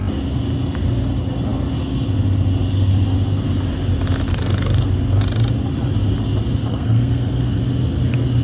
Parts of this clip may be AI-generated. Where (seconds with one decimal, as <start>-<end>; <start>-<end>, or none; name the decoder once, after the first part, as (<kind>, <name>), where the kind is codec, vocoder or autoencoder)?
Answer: 4.3-4.9 (codec, SNAC); 6.7-7.6